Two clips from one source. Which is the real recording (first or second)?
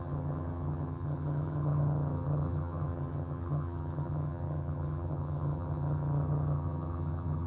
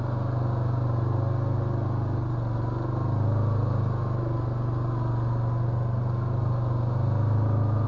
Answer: second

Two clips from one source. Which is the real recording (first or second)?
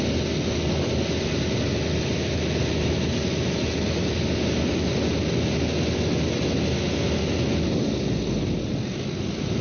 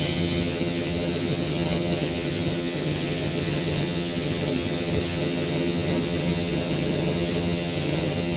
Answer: first